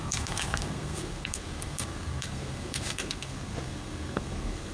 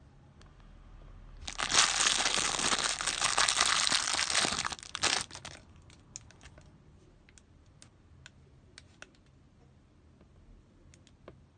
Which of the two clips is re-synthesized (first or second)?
first